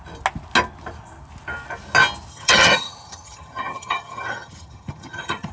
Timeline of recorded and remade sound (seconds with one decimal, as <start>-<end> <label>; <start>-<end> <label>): 0.0-2.3 recorded; 2.3-5.5 remade